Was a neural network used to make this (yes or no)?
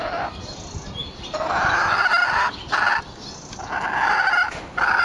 no